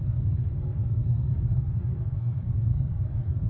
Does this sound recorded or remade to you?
remade